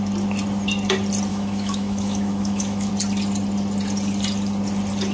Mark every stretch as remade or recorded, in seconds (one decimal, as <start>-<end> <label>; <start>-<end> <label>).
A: 0.0-1.3 recorded; 1.3-2.9 remade; 2.9-5.1 recorded